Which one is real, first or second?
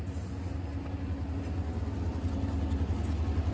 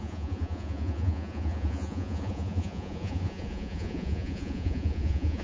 first